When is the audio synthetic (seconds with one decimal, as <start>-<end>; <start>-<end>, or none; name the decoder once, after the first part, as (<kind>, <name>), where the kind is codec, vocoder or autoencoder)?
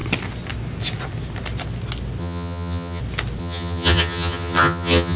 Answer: 2.2-3.0 (vocoder, HiFi-GAN); 3.4-5.2